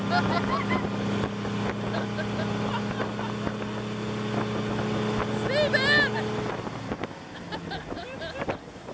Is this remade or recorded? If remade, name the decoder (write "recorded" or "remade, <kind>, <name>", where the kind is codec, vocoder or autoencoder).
recorded